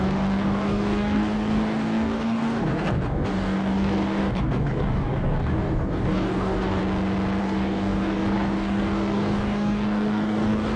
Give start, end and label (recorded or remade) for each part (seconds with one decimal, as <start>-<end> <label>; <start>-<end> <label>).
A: 0.0-6.8 remade; 6.8-7.4 recorded; 7.4-10.8 remade